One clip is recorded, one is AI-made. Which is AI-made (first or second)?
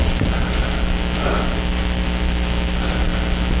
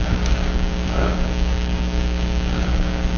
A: second